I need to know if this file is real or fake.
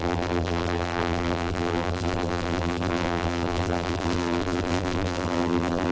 fake